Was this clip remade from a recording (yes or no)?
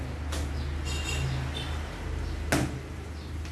no